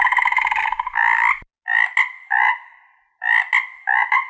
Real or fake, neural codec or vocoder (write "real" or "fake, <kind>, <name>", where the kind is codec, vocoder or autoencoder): real